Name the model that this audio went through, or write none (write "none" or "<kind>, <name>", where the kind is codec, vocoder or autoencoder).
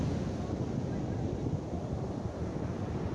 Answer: none